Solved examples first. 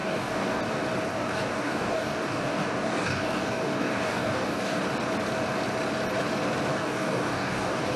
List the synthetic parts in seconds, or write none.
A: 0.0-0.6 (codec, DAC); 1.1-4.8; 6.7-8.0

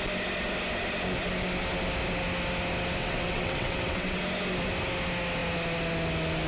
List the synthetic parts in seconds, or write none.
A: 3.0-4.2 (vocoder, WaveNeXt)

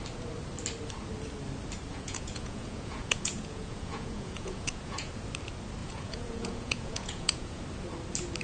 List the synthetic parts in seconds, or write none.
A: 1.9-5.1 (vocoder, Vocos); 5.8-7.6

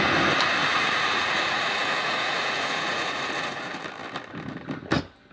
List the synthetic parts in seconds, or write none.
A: 0.6-3.8 (vocoder, Vocos)